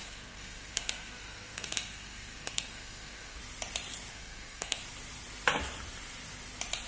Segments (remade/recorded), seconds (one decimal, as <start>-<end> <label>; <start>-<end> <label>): 0.0-3.4 remade; 3.4-4.1 recorded; 4.1-4.8 remade; 4.8-6.9 recorded